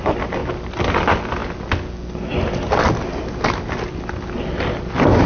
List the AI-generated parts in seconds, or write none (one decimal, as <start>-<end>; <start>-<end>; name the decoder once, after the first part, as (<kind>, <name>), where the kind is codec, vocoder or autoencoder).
none